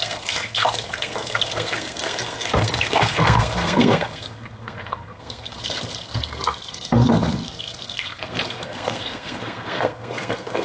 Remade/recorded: remade